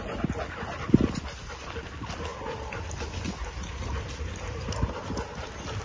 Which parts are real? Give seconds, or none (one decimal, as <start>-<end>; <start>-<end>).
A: 0.0-5.8

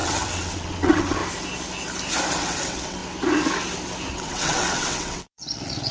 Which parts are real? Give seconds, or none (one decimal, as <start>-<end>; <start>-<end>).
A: 1.2-2.3; 3.0-4.1

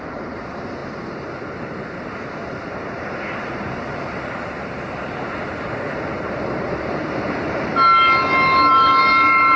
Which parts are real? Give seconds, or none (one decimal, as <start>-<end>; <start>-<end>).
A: 7.7-8.7

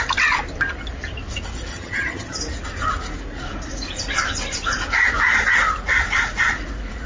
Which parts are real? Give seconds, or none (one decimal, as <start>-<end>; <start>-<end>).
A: 0.0-1.7; 2.4-7.1

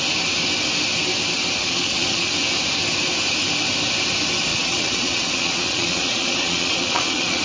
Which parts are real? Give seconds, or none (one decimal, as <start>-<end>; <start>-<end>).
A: 0.0-1.6; 2.3-4.5